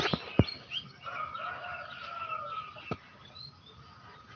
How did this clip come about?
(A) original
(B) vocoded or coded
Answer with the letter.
A